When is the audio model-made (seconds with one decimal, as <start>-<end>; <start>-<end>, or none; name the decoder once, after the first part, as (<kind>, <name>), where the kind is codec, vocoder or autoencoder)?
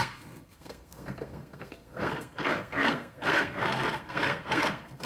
0.0-5.1 (codec, SNAC)